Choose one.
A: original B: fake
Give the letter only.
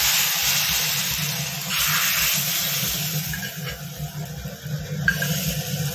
A